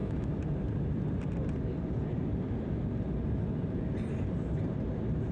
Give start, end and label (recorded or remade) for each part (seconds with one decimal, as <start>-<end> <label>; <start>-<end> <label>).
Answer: 0.0-0.5 remade; 0.5-5.3 recorded